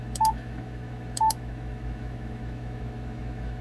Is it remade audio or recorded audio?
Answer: remade